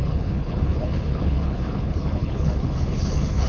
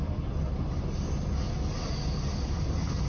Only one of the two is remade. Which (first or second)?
first